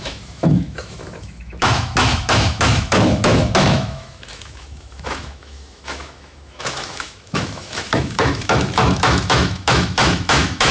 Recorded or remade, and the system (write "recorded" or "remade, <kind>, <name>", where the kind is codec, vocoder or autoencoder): remade, autoencoder, DAC-VAE